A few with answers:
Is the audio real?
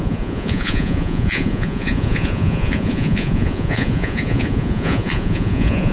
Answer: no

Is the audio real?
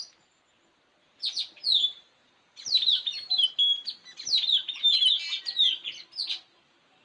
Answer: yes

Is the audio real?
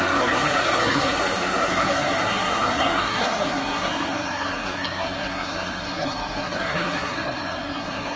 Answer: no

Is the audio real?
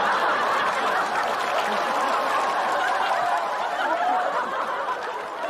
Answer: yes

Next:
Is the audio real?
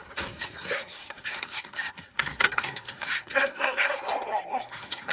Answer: no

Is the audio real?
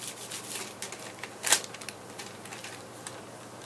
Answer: yes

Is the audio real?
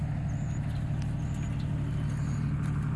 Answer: yes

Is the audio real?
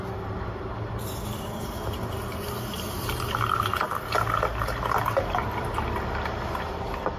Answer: yes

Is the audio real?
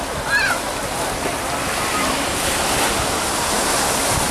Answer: yes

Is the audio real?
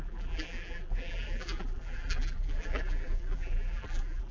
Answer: no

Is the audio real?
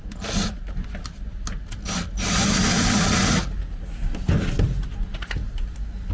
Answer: yes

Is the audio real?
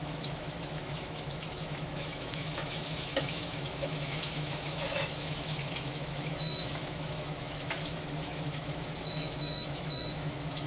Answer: no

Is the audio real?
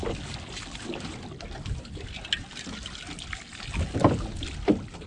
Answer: yes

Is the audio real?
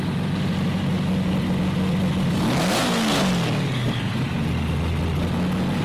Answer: yes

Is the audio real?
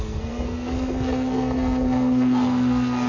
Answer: no